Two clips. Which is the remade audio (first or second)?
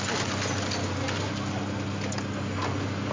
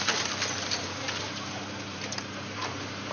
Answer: second